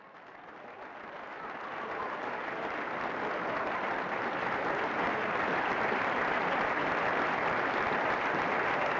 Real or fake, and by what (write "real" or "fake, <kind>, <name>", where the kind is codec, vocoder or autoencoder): real